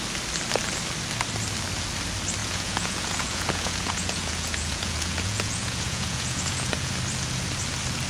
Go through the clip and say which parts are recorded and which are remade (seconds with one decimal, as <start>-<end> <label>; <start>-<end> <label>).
0.0-2.4 recorded; 2.4-6.9 remade; 6.9-8.1 recorded